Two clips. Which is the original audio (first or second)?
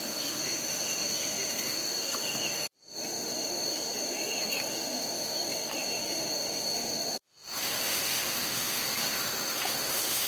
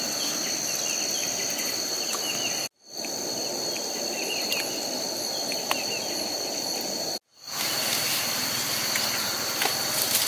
second